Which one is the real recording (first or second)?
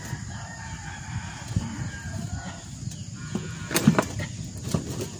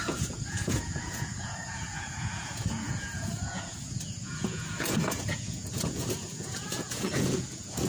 first